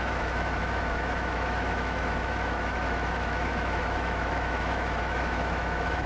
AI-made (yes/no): yes